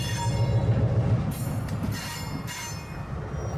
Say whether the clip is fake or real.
real